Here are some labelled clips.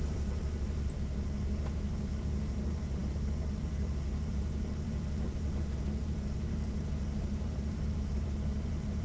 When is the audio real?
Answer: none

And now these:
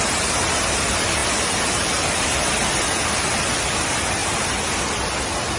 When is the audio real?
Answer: 0.0-5.6

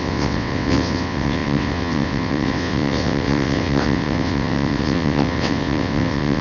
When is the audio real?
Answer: none

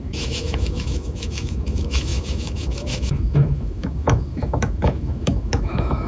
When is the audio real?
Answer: none

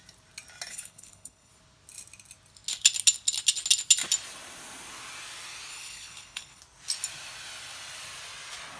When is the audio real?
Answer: 0.0-0.7; 1.5-5.7; 6.6-8.8